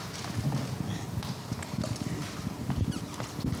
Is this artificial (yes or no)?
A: no